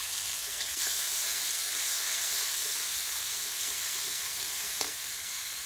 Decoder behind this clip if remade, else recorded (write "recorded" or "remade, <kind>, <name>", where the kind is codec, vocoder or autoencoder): remade, codec, SNAC